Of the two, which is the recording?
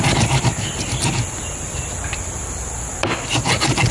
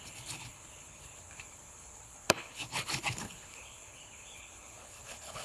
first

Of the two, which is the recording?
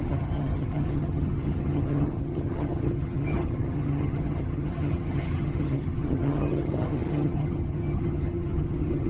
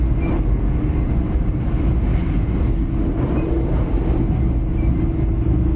second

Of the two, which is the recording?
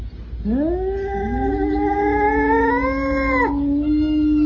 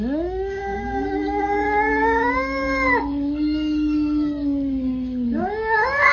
first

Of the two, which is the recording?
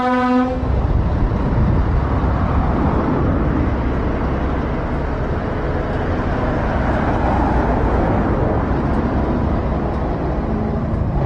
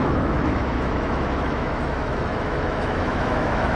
first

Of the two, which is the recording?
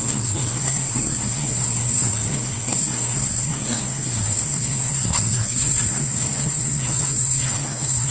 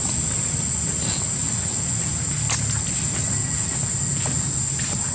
second